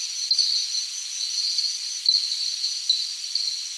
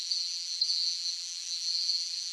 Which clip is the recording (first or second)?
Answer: first